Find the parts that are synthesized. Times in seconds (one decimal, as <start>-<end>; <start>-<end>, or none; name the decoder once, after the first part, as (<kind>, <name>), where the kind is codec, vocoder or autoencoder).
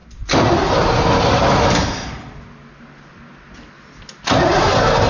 none